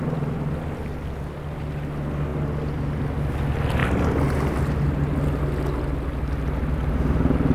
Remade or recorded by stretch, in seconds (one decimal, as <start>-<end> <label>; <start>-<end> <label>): 0.0-7.5 recorded